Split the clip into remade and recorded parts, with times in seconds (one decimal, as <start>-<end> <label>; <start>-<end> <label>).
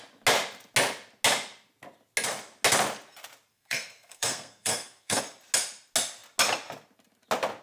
0.0-3.5 recorded; 3.5-5.2 remade; 5.2-7.6 recorded